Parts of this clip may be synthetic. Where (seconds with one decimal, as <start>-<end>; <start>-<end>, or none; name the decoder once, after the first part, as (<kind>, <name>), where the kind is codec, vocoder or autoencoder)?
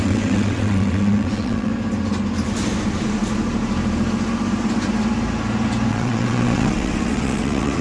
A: 0.0-1.7 (vocoder, WaveNeXt); 5.9-7.8